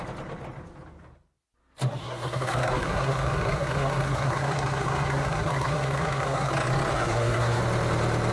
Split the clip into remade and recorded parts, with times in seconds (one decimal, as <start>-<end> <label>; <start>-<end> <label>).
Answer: 0.0-2.0 recorded; 2.0-6.5 remade; 6.5-6.9 recorded; 6.9-7.6 remade; 7.6-8.3 recorded